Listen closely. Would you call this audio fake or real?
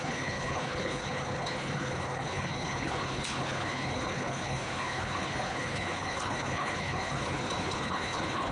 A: fake